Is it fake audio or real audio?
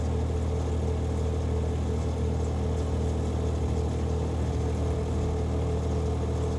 real